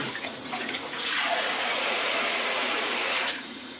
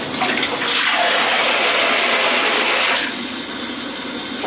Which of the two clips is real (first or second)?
second